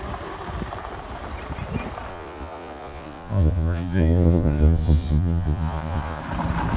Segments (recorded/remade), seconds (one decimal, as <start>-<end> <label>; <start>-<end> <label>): 0.0-2.1 recorded; 2.1-6.2 remade; 6.2-6.8 recorded